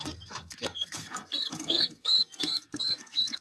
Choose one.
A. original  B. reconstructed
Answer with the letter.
B